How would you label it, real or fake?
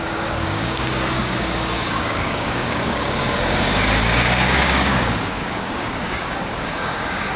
fake